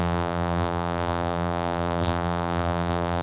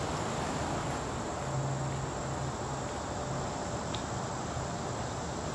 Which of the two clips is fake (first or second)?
first